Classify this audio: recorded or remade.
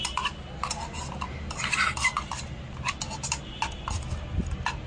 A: recorded